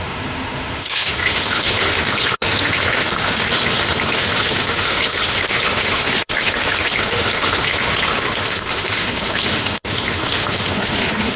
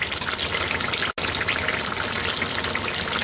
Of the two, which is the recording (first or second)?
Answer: second